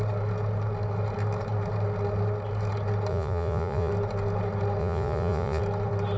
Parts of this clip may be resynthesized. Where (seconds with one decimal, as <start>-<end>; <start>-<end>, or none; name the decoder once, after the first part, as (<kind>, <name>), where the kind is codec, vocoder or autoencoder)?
3.1-3.9 (vocoder, Vocos); 4.8-5.6